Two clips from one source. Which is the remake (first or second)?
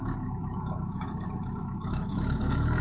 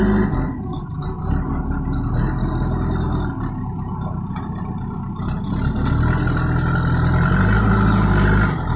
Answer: first